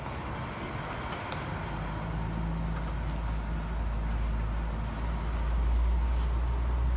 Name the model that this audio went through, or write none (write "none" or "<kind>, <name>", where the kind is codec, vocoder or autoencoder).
none